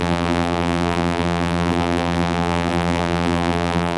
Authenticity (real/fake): fake